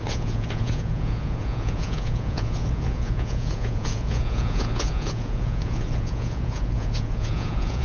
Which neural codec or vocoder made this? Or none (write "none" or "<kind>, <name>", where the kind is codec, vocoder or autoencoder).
vocoder, Vocos